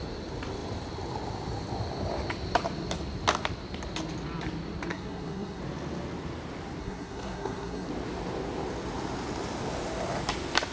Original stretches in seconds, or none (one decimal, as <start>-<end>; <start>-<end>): 0.0-4.9; 5.6-6.8; 7.9-10.7